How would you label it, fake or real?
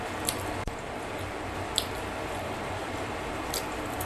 fake